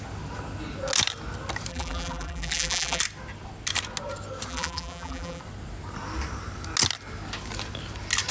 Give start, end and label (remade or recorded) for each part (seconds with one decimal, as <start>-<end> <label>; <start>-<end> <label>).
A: 0.0-1.7 recorded; 1.7-3.0 remade; 3.0-4.5 recorded; 4.5-5.4 remade; 5.4-8.3 recorded